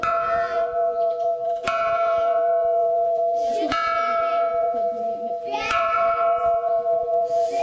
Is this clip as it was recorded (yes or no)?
no